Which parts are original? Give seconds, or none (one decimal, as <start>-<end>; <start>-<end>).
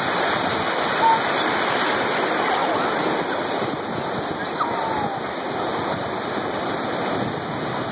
0.0-2.6; 4.2-5.7; 6.8-7.9